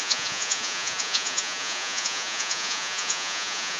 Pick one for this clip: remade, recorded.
remade